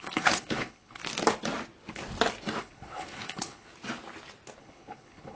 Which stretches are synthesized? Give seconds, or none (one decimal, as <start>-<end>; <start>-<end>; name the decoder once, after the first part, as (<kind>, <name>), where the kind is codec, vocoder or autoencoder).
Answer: 0.0-1.0 (codec, HILCodec); 2.6-3.7; 4.6-5.4